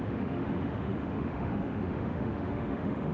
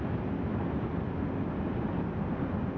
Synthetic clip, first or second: first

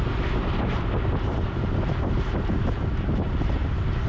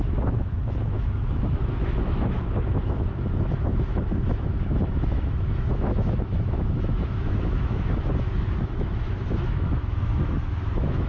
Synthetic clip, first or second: second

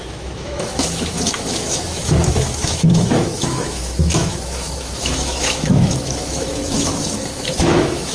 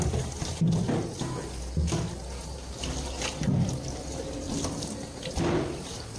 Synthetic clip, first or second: first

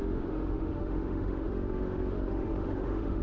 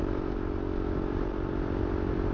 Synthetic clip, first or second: first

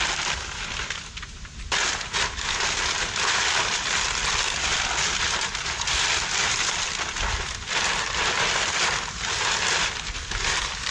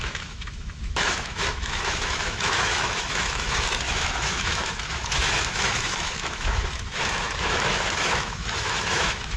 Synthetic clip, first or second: second